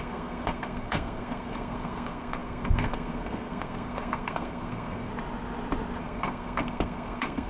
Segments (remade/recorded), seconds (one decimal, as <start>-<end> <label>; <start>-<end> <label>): 0.0-5.1 remade; 5.1-6.0 recorded; 6.0-7.5 remade